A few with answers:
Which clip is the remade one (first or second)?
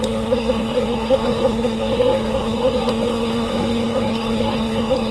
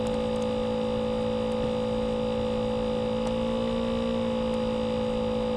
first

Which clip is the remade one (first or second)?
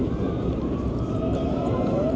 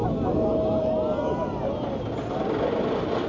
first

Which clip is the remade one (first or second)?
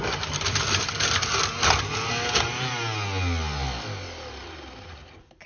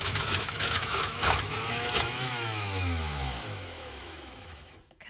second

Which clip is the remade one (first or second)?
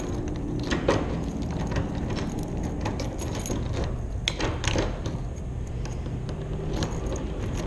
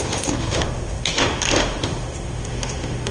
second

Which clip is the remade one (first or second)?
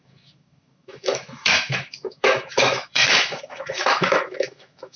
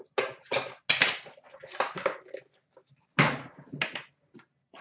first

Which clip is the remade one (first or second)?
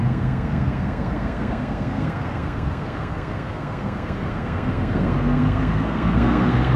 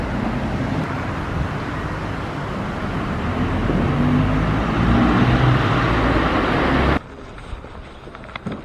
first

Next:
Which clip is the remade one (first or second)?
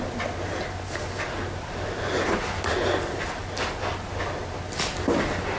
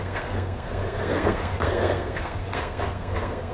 second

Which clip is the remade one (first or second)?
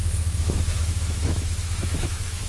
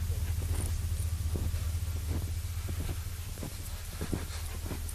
first